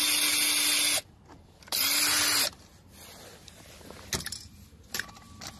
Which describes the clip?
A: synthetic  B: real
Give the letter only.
B